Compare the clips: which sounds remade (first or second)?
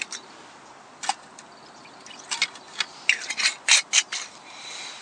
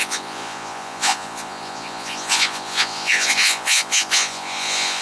second